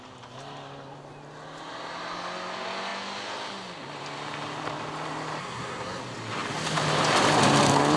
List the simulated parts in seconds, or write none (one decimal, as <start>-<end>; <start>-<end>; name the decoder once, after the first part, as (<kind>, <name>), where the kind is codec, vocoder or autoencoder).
5.4-6.0 (codec, SNAC)